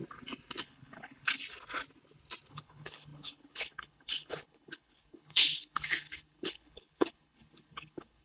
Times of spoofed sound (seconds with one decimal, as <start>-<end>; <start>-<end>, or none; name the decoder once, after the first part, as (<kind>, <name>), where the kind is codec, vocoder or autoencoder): 0.6-1.4 (codec, HILCodec); 2.5-8.2